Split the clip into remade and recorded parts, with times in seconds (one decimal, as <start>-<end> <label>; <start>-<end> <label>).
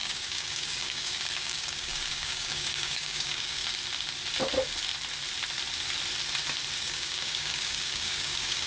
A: 0.0-3.6 remade; 3.6-6.8 recorded; 6.8-8.7 remade